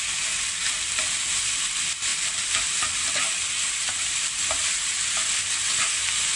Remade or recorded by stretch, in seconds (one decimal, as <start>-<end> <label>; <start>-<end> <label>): 0.0-6.4 recorded